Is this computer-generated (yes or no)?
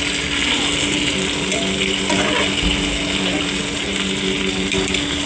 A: no